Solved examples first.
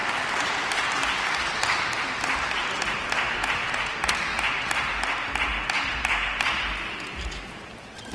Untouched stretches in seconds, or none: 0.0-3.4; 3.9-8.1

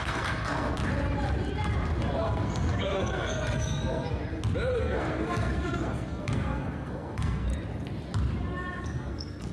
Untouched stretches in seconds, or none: 0.8-2.2; 4.2-4.8; 7.5-8.8

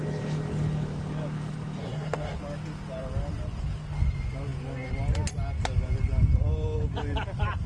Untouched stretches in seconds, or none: 0.0-1.8; 2.4-7.7

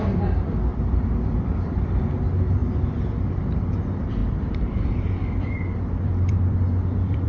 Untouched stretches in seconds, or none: 0.0-0.7; 2.0-4.2